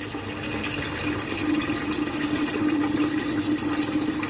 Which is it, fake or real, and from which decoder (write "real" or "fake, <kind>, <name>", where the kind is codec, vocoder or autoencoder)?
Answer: real